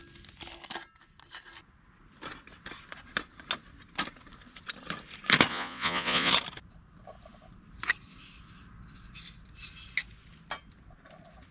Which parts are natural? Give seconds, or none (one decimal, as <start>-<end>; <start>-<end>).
0.0-5.5; 6.3-11.5